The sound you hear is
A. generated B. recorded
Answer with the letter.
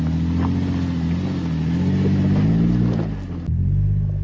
B